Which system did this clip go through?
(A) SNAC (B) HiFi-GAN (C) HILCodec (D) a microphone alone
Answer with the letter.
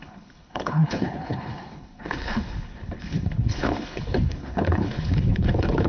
C